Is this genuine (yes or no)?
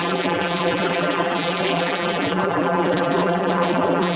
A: no